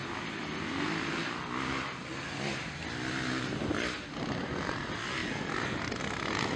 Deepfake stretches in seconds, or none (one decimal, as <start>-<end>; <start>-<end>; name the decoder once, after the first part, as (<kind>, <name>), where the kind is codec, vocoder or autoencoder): none